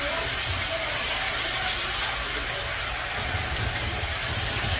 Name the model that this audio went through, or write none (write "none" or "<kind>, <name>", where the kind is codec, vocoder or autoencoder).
none